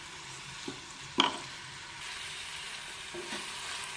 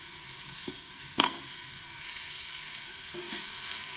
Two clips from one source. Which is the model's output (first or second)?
second